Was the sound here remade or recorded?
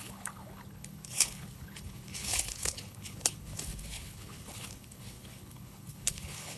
remade